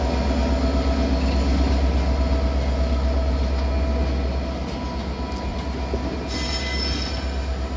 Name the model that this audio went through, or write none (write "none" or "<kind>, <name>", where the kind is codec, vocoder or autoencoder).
none